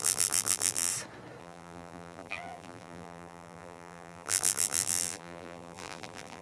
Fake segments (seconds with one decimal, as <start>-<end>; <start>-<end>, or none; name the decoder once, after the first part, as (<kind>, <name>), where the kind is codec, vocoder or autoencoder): 0.0-0.9 (vocoder, BigVGAN v2); 1.4-6.4